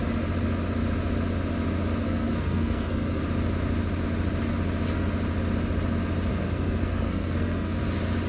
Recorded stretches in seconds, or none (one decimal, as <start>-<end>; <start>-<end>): 0.0-2.0; 3.2-6.3; 7.8-8.3